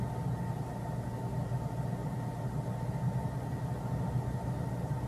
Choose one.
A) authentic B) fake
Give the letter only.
A